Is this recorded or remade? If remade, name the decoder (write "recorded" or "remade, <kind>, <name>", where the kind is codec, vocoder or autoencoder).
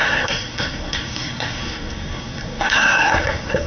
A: remade, codec, SNAC